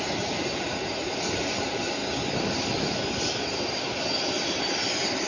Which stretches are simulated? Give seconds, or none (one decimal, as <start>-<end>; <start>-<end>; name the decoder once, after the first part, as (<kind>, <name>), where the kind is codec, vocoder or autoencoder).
0.0-2.0 (vocoder, BigVGAN v2)